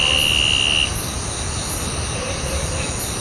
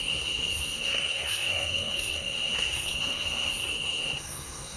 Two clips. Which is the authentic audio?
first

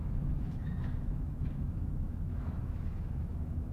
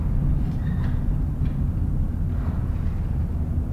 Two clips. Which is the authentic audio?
second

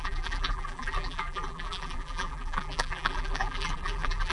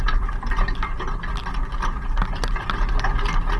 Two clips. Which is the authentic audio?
second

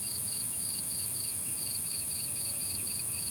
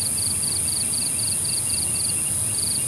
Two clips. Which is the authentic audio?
second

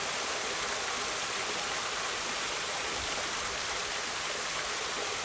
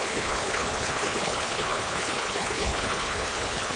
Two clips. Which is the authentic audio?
first